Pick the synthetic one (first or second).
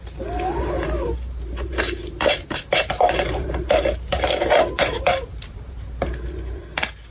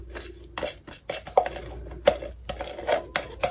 first